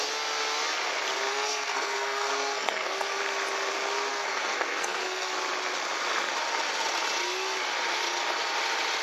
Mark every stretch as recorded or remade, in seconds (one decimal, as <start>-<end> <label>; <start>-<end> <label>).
0.0-1.3 recorded; 1.3-3.2 remade; 3.2-4.1 recorded; 4.1-5.3 remade; 5.3-9.0 recorded